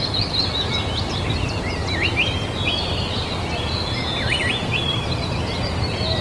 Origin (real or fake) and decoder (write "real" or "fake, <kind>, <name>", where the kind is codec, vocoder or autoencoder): fake, vocoder, BigVGAN v2